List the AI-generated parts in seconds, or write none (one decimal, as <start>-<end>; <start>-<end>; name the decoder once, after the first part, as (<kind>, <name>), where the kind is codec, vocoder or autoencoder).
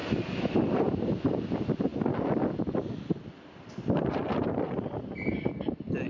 none